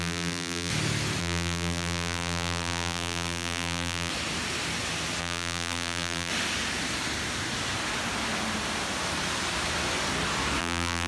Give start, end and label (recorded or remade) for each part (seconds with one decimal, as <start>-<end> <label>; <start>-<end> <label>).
0.0-0.7 remade; 0.7-1.2 recorded; 1.2-4.1 remade; 4.1-5.2 recorded; 5.2-6.3 remade; 6.3-10.6 recorded; 10.6-11.1 remade